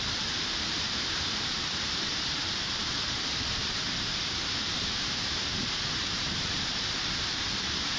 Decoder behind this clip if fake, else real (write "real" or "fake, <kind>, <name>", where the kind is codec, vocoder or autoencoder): fake, vocoder, BigVGAN v2